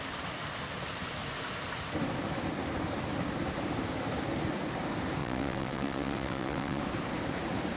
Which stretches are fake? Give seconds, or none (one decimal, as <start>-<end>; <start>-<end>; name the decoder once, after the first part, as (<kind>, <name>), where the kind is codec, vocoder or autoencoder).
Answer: 5.2-6.8 (vocoder, WaveNeXt)